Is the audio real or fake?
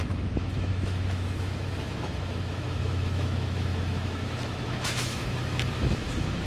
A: fake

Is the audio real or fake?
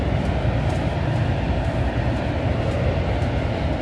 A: real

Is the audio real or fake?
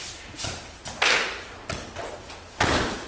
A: real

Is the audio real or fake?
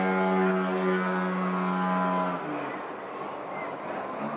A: real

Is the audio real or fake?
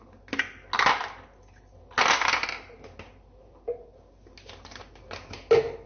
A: real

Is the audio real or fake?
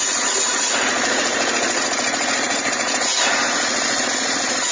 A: fake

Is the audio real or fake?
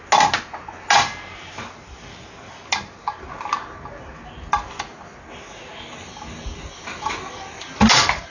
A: real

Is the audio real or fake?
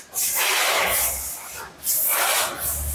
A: real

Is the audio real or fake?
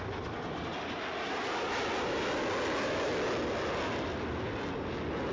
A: real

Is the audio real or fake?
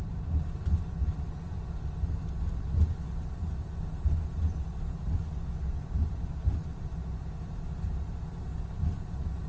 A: real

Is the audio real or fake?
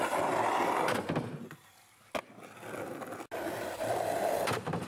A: real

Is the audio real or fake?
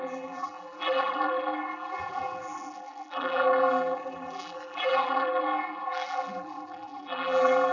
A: fake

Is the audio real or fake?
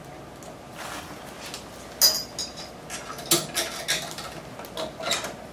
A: real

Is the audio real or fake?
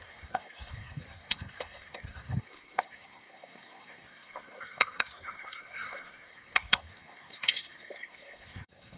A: fake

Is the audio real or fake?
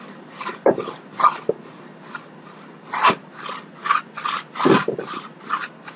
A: real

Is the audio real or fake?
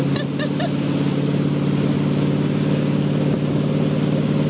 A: real